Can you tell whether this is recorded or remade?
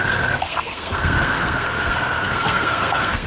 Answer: remade